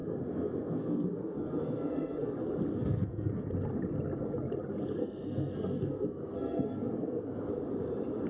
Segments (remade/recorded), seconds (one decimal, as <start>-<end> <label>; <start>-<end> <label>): 0.0-2.3 remade; 2.3-2.7 recorded; 2.7-3.5 remade; 3.5-5.0 recorded; 5.0-7.5 remade; 7.5-8.3 recorded